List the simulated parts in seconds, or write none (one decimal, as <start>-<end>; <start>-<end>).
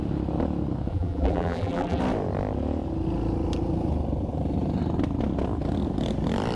0.9-2.0